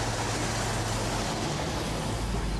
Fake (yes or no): no